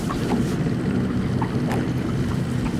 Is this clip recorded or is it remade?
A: recorded